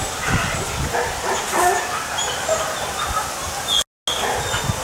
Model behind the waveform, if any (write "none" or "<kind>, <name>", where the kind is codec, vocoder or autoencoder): none